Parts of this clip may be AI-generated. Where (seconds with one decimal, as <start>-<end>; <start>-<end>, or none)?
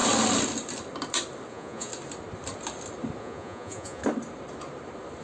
1.5-1.9; 3.2-4.0